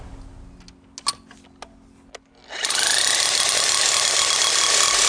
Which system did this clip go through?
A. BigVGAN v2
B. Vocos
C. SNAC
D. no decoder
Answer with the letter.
D